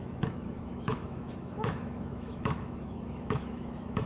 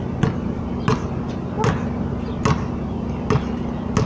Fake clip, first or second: first